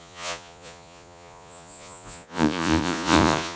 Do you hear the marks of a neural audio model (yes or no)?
yes